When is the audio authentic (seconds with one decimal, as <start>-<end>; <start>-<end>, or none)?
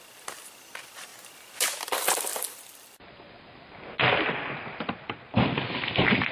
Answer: 0.0-6.3